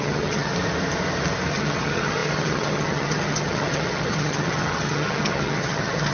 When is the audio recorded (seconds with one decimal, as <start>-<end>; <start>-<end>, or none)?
0.5-1.5